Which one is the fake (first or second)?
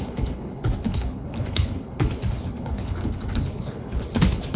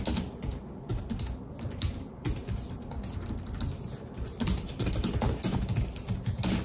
first